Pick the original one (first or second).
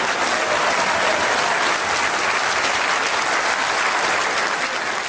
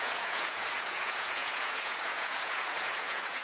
first